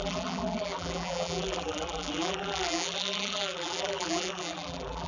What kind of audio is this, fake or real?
fake